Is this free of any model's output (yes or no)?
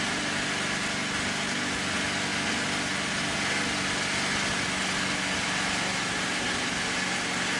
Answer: yes